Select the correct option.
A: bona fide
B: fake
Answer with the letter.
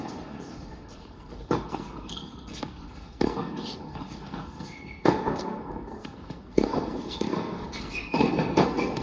B